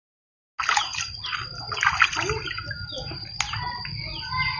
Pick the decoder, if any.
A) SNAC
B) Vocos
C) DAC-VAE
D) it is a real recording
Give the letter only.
D